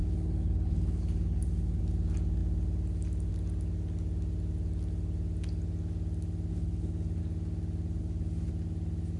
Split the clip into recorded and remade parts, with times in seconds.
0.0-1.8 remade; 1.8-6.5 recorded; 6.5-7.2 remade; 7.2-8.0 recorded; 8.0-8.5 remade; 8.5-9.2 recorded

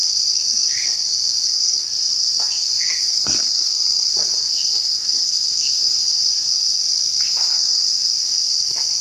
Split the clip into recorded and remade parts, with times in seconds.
0.0-9.0 remade

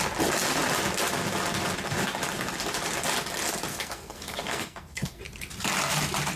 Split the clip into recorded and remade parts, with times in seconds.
0.0-3.7 recorded; 3.7-5.2 remade; 5.2-6.4 recorded